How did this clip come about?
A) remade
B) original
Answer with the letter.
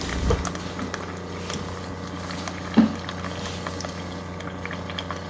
B